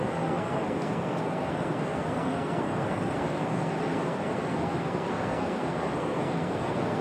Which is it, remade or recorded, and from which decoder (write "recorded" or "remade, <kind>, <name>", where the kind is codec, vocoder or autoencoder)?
remade, codec, SNAC